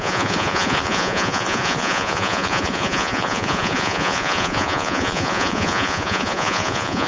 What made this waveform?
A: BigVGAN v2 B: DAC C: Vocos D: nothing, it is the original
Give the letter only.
C